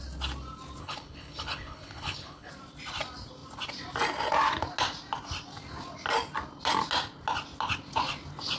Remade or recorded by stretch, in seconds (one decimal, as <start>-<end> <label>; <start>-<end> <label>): 0.0-0.8 recorded; 0.8-2.5 remade; 2.5-8.6 recorded